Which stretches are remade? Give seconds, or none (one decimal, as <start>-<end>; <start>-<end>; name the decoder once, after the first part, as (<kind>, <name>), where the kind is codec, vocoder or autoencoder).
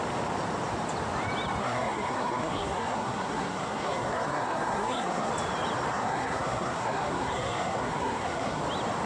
1.6-5.3 (codec, SNAC); 5.9-8.6